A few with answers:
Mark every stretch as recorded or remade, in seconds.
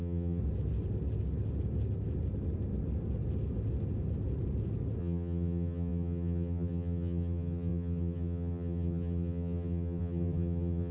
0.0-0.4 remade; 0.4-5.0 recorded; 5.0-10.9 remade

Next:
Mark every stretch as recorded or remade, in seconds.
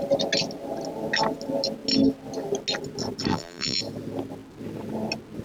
0.0-3.3 recorded; 3.3-3.8 remade; 3.8-5.4 recorded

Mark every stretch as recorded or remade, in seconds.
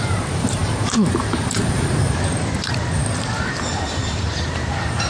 0.0-5.1 remade